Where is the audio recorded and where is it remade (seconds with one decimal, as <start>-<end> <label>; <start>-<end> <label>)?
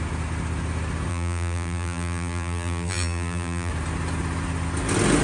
0.0-1.1 recorded; 1.1-3.7 remade; 3.7-5.2 recorded